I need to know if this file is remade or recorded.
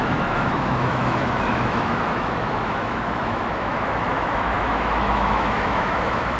remade